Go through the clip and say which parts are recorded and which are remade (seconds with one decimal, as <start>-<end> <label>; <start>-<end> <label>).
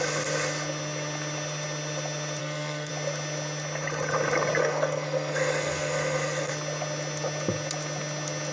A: 0.0-2.4 recorded; 2.4-2.9 remade; 2.9-4.6 recorded; 4.6-6.5 remade; 6.5-8.5 recorded